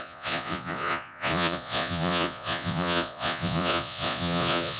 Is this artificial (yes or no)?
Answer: yes